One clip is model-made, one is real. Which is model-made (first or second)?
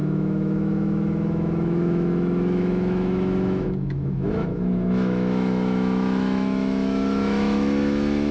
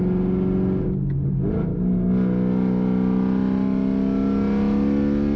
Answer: first